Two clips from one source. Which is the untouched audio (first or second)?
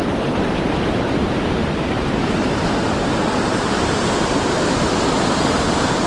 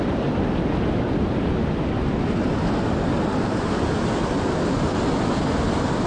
second